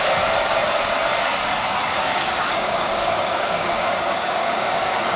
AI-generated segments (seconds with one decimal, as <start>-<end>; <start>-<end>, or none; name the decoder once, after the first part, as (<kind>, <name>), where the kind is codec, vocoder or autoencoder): 1.8-5.2 (codec, DAC)